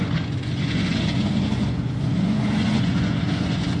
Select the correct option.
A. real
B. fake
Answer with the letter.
B